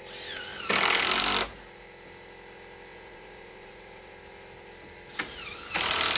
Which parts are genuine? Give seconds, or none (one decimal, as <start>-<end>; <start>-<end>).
0.0-2.9; 4.1-6.2